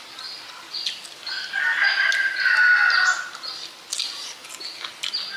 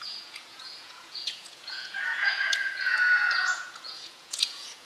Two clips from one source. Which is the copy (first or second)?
second